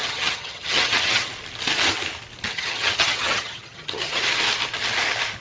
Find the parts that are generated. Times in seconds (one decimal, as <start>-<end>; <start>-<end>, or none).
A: 0.0-1.3; 2.5-4.2